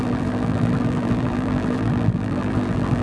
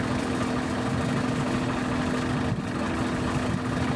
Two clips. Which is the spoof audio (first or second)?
first